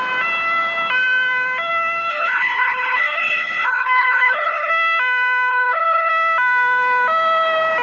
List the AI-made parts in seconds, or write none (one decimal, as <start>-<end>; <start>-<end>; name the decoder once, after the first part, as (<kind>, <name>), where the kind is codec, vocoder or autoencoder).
2.1-4.7 (codec, HILCodec); 5.5-6.1